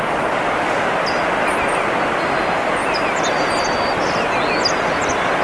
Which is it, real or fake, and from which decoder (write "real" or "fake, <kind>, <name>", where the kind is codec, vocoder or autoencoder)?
real